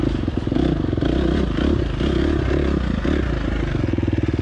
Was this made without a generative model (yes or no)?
yes